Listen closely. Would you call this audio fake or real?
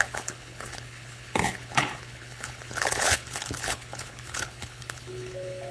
fake